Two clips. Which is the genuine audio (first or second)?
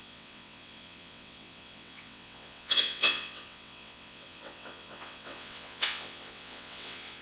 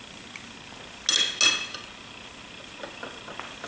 second